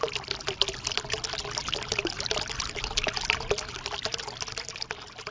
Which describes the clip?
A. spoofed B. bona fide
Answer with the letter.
B